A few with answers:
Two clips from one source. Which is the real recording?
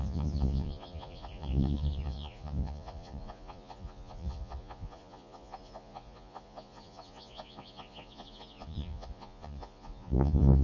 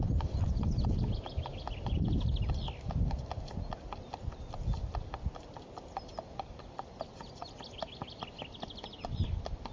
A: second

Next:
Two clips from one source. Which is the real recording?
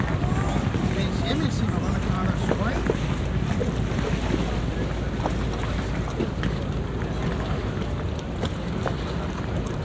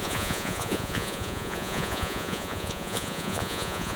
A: first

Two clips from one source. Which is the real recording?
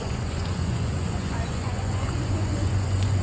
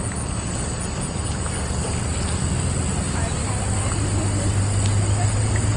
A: second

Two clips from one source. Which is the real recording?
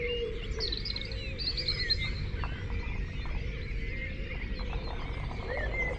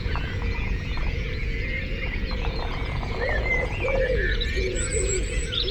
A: first